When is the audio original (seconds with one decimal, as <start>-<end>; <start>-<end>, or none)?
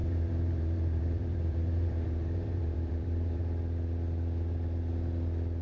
3.4-5.6